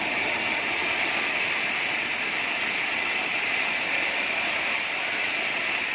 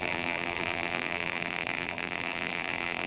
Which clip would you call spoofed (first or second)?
second